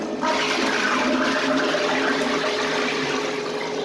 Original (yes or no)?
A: yes